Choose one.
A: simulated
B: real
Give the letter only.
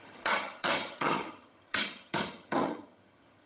A